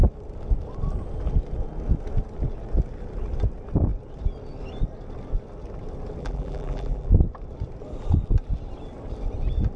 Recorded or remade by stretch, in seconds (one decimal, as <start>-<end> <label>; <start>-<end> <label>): 0.0-6.2 recorded; 6.2-7.1 remade; 7.1-9.8 recorded